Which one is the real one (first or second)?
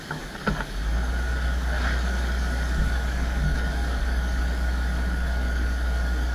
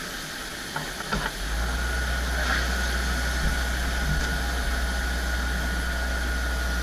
second